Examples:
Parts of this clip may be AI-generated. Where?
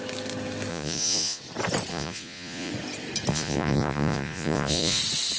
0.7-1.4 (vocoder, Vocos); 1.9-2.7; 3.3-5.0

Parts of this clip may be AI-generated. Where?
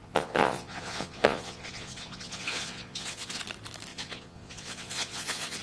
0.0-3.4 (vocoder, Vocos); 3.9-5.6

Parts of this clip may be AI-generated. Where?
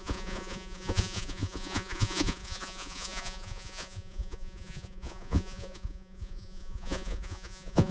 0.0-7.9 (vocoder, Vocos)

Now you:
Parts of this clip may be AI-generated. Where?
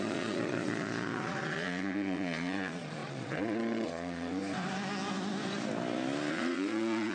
0.0-4.4 (vocoder, Vocos); 6.3-7.1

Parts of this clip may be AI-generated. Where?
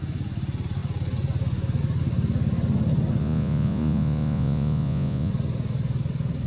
3.2-5.3 (vocoder, Vocos)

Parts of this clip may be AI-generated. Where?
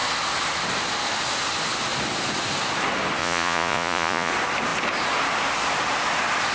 3.2-4.3 (vocoder, Vocos)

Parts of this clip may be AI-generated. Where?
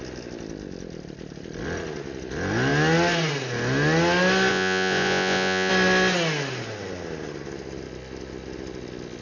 4.5-5.7 (vocoder, Vocos)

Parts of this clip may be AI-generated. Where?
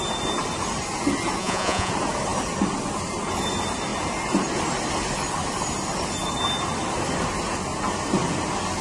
1.4-1.9 (vocoder, Vocos)